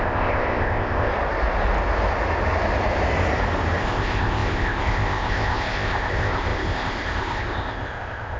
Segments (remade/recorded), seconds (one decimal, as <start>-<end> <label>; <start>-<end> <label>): 0.0-1.1 remade; 1.1-3.8 recorded; 3.8-8.4 remade